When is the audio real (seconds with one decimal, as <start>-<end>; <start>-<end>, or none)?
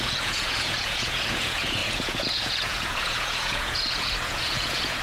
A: none